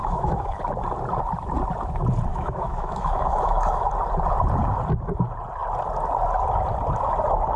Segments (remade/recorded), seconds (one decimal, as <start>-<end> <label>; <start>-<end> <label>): 0.0-0.6 remade; 0.6-2.3 recorded; 2.3-3.9 remade; 3.9-7.6 recorded